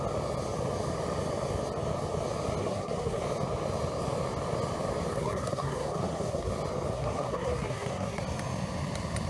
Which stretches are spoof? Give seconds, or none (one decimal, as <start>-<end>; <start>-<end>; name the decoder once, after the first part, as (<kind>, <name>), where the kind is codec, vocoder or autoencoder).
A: 2.6-3.2 (codec, SNAC); 5.1-6.5; 6.9-8.2